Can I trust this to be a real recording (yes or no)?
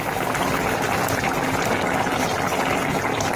yes